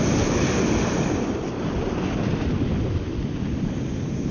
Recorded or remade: recorded